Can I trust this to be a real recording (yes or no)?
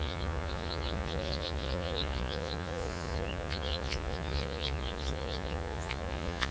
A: no